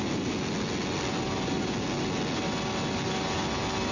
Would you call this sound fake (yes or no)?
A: no